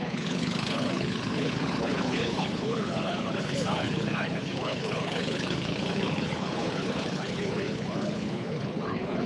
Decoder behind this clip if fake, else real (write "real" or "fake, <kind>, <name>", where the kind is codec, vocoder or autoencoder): fake, codec, HILCodec